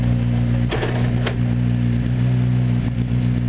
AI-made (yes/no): no